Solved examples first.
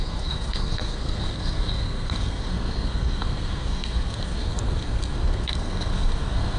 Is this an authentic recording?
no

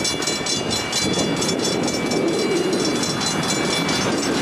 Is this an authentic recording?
yes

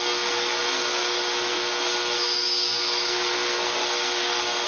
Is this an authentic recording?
no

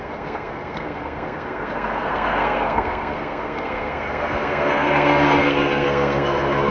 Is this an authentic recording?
no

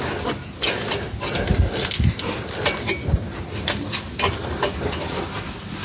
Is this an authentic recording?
yes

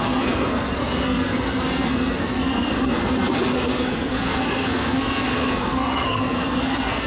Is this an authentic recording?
no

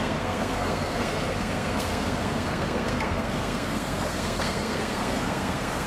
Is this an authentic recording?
no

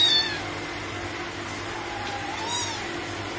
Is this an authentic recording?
yes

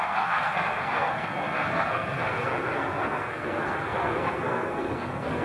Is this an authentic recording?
no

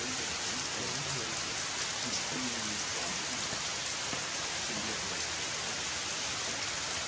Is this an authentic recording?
yes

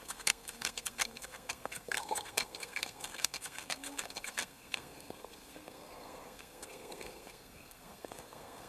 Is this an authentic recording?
no